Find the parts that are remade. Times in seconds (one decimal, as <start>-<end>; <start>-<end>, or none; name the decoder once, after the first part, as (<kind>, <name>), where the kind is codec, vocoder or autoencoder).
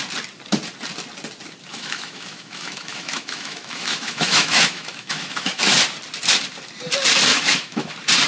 1.7-5.6 (autoencoder, DAC-VAE); 7.3-7.9